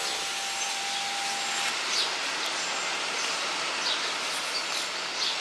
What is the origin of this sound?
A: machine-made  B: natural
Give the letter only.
B